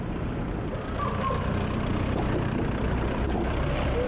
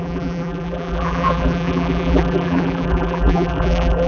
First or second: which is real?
first